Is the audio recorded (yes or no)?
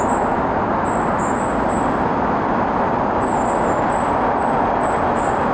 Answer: yes